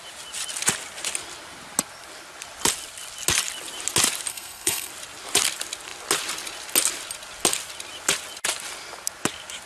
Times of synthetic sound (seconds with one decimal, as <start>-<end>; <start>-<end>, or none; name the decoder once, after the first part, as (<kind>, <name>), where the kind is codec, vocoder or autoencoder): 4.3-4.9 (codec, SNAC)